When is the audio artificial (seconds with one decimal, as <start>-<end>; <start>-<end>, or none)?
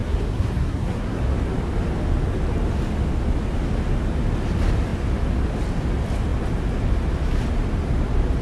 0.0-1.2